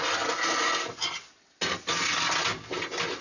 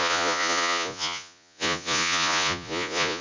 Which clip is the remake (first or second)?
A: second